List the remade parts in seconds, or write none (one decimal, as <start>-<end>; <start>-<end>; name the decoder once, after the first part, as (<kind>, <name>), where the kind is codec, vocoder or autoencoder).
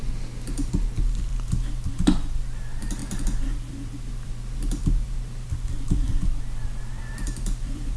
0.0-1.3 (vocoder, BigVGAN v2); 1.8-8.0